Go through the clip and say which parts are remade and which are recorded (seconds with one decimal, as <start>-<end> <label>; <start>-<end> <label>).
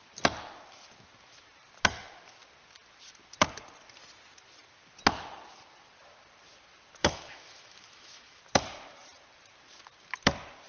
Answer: 0.0-7.0 recorded; 7.0-8.4 remade; 8.4-10.7 recorded